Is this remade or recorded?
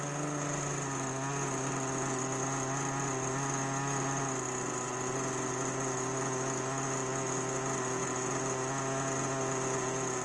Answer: recorded